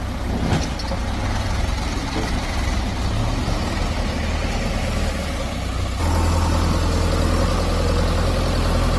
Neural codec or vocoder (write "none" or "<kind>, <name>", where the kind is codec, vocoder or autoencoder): none